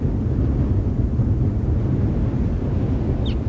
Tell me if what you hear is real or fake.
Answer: real